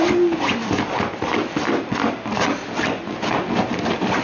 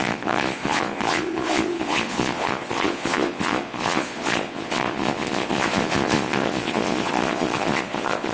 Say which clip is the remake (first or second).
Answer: second